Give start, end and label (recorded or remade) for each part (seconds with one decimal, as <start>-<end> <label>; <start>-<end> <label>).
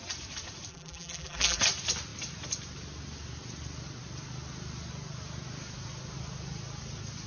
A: 0.0-0.7 recorded; 0.7-1.6 remade; 1.6-7.3 recorded